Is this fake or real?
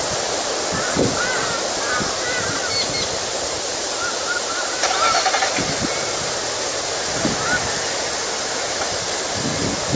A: real